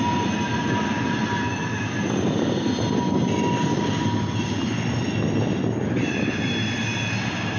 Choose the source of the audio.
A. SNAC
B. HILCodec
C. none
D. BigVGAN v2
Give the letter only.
C